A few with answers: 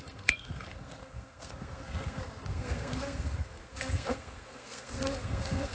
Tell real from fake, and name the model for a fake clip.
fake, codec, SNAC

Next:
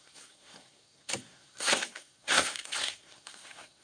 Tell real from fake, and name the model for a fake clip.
fake, codec, SNAC